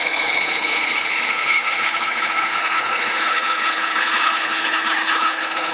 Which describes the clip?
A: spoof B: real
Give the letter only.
A